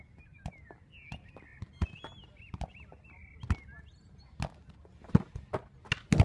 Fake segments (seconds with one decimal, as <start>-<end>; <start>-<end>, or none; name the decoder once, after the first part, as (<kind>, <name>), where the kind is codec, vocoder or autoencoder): none